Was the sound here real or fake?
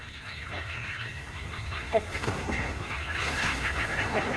fake